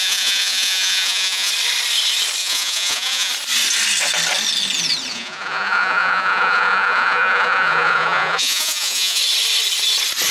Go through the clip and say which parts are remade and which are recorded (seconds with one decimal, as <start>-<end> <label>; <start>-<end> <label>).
0.0-1.5 remade; 1.5-2.4 recorded; 2.4-3.3 remade; 3.3-5.1 recorded; 5.1-9.2 remade; 9.2-10.3 recorded